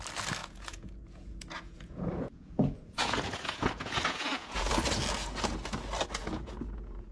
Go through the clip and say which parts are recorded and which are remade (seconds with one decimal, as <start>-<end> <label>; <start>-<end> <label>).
0.0-0.4 recorded; 0.4-4.7 remade; 4.7-6.2 recorded; 6.2-7.1 remade